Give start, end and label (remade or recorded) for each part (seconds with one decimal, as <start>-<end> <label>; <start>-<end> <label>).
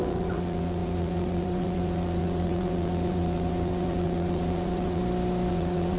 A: 0.0-5.0 remade; 5.0-5.5 recorded; 5.5-6.0 remade